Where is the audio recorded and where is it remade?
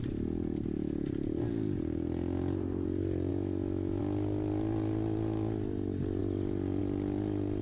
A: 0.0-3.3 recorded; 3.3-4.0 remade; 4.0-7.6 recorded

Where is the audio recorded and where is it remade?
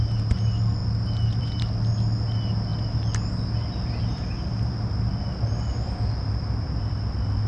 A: 0.0-7.5 recorded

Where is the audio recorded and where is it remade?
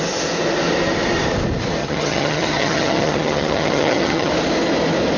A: 0.0-1.8 recorded; 1.8-4.3 remade; 4.3-5.2 recorded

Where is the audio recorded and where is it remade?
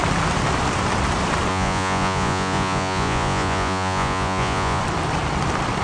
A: 0.0-1.5 recorded; 1.5-4.8 remade; 4.8-5.8 recorded